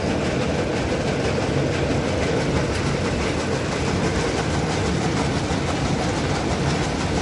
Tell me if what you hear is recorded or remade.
recorded